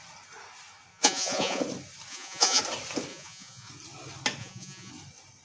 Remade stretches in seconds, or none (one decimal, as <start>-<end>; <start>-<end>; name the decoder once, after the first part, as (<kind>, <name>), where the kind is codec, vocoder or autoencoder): 0.9-1.6 (vocoder, Vocos); 2.1-2.6; 3.1-3.7; 4.4-4.9

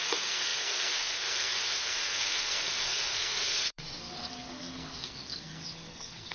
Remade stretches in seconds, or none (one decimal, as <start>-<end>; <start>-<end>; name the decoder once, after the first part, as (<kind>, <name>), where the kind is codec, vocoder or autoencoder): 0.0-6.3 (codec, SNAC)

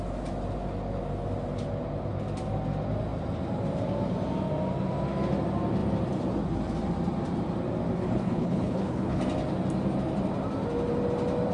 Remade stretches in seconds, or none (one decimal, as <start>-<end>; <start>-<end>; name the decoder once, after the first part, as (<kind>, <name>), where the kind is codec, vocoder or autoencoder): 8.0-9.2 (codec, HILCodec)

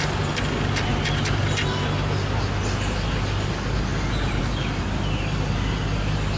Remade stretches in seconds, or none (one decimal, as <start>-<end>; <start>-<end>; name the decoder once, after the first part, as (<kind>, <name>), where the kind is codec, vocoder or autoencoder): none